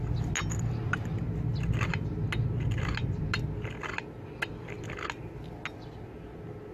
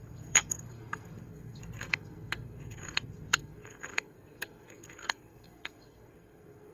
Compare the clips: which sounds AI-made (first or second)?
second